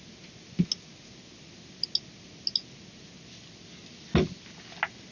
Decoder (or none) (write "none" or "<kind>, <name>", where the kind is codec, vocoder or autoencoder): none